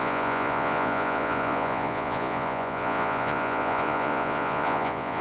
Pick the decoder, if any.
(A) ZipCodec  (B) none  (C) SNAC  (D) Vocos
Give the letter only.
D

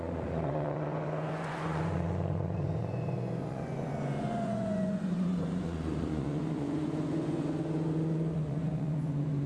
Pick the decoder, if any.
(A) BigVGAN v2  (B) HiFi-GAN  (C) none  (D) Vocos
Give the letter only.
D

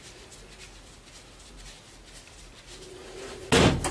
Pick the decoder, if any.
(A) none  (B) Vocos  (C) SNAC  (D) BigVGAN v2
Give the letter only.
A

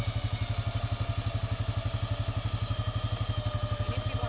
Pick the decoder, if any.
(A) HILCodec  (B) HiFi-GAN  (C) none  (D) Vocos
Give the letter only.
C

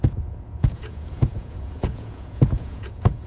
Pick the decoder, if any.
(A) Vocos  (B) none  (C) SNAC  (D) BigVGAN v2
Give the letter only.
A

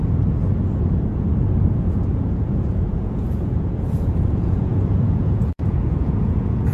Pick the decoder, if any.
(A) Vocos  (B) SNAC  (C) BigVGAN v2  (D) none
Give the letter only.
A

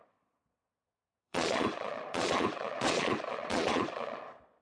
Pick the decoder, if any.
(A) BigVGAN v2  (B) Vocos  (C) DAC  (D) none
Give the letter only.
B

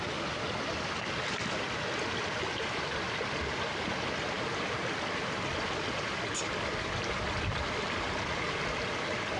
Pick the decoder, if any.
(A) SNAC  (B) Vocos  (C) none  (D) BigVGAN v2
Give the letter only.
C